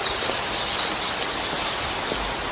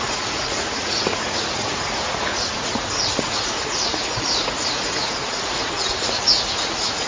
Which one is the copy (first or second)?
second